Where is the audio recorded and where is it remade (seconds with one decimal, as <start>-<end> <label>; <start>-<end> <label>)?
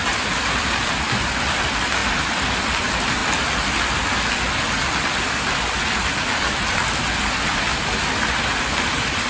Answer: 0.0-9.3 recorded